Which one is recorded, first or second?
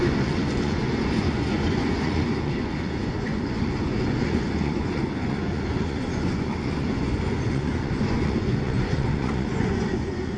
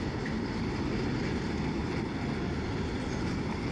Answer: second